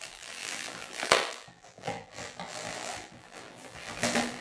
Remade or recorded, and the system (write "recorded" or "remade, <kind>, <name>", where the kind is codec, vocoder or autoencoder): remade, vocoder, BigVGAN v2